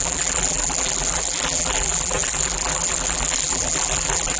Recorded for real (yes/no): no